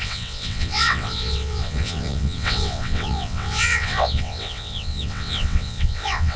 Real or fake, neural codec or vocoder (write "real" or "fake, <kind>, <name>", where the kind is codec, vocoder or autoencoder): fake, vocoder, WaveNeXt